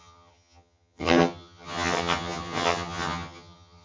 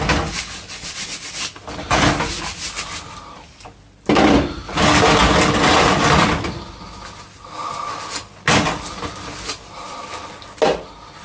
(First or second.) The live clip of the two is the second